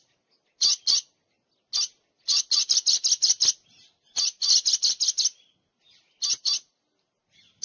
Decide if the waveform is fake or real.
real